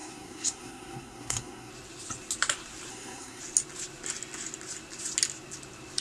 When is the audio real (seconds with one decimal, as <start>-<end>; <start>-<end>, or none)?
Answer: 1.7-2.9; 3.4-6.0